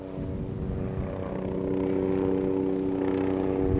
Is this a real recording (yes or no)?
yes